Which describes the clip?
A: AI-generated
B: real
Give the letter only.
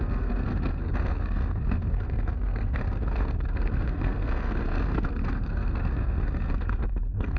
A